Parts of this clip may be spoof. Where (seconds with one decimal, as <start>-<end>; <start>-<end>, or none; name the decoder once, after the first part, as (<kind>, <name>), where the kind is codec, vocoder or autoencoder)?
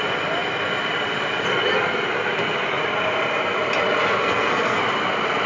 4.2-4.8 (codec, SNAC)